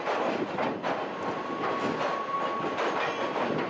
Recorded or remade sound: recorded